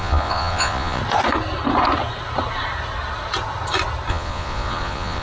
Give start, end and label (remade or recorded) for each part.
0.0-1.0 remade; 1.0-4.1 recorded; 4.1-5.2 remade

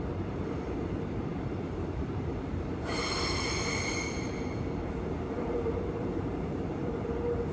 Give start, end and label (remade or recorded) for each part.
0.0-7.5 remade